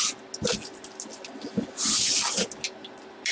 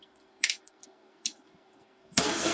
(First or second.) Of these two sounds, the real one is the first